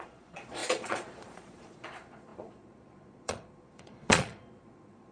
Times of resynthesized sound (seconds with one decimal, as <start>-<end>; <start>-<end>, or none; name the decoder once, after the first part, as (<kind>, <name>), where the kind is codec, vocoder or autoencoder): 0.0-5.1 (vocoder, Vocos)

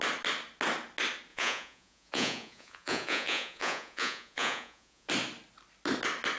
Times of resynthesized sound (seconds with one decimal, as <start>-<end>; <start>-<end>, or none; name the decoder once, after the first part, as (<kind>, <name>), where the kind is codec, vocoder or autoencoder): 1.3-5.1 (vocoder, Vocos)

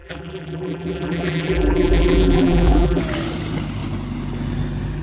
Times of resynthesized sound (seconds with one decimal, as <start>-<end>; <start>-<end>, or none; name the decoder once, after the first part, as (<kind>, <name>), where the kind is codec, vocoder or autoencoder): 0.0-3.0 (vocoder, BigVGAN v2)

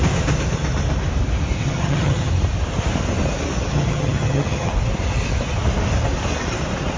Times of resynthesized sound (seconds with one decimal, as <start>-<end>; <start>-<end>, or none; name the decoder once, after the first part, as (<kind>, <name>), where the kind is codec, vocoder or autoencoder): 1.6-2.3 (vocoder, HiFi-GAN); 3.7-4.7

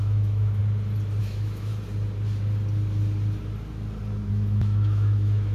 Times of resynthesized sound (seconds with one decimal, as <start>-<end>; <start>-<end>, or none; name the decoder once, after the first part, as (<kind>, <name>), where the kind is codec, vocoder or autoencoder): 0.0-0.6 (autoencoder, DAC-VAE); 1.2-1.7; 4.3-5.5

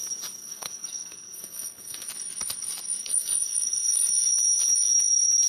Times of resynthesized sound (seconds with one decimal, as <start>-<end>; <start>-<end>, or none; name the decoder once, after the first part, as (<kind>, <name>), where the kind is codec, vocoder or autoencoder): 0.4-2.1 (codec, SNAC); 3.0-4.1